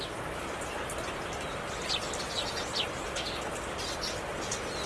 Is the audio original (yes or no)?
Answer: yes